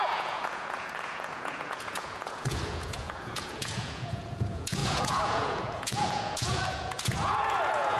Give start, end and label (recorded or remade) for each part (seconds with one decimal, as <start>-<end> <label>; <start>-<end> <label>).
0.0-8.0 remade